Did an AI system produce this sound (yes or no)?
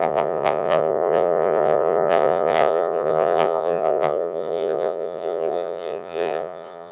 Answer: yes